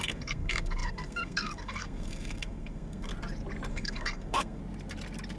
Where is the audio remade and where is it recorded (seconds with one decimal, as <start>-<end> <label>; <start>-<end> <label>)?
0.0-3.1 remade; 3.1-3.7 recorded; 3.7-4.6 remade; 4.6-5.4 recorded